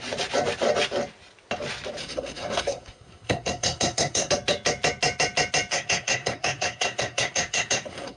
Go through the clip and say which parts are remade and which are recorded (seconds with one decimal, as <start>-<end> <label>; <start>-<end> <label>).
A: 0.0-2.0 recorded; 2.0-4.3 remade; 4.3-5.7 recorded; 5.7-8.2 remade